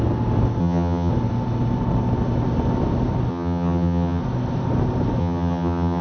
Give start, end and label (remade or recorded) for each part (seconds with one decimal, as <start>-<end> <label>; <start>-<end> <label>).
0.0-0.6 recorded; 0.6-1.1 remade; 1.1-3.3 recorded; 3.3-4.2 remade; 4.2-5.2 recorded; 5.2-6.0 remade